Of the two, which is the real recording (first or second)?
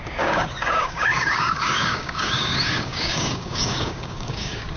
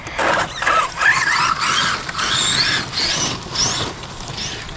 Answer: second